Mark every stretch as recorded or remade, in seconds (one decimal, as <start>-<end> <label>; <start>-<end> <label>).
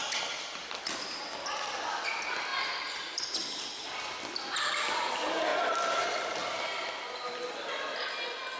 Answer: 0.0-8.6 recorded